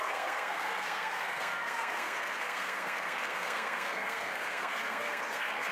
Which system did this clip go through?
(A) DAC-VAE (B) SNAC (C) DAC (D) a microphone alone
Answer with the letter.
B